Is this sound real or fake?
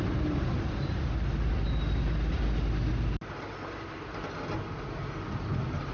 real